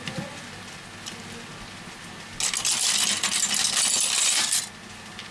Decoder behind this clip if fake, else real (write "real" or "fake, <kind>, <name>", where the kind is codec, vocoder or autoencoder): real